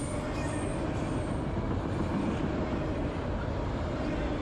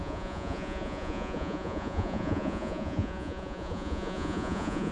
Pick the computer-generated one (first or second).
second